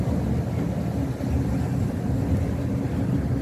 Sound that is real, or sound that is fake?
real